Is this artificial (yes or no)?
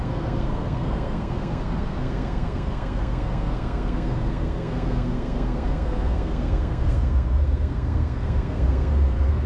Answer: yes